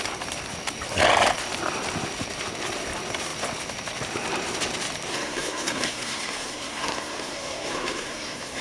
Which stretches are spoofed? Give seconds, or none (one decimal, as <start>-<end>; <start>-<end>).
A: 5.1-8.6